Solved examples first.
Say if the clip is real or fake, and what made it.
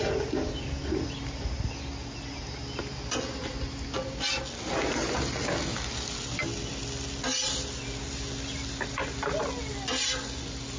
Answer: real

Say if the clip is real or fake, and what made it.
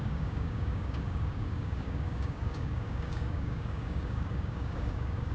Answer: fake, codec, DAC